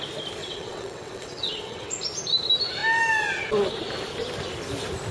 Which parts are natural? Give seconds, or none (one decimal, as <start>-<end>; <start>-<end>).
0.0-0.4; 1.9-5.1